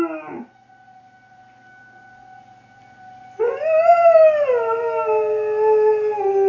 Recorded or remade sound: recorded